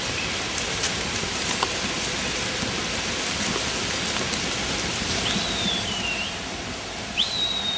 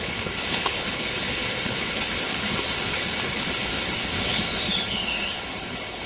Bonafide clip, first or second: first